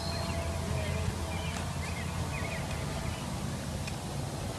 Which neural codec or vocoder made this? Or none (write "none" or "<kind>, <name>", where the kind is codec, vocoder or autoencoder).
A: none